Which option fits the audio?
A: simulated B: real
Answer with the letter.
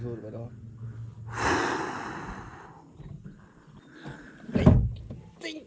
B